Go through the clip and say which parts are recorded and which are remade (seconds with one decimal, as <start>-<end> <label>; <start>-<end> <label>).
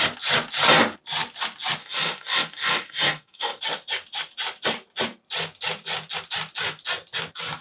0.0-1.8 recorded; 1.8-3.6 remade; 3.6-7.6 recorded